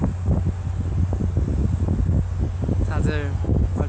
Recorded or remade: recorded